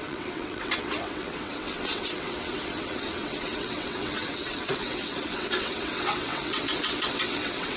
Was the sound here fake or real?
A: fake